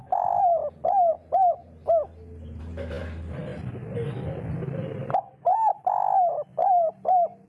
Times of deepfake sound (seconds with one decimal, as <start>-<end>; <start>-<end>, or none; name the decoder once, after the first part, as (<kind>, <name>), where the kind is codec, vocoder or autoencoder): none